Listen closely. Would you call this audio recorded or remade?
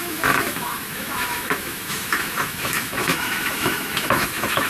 remade